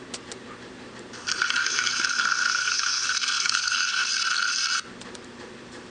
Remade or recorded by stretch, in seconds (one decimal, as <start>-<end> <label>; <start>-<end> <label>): 0.0-1.6 recorded; 1.6-4.1 remade; 4.1-5.9 recorded